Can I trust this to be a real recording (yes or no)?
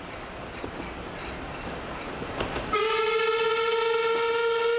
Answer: yes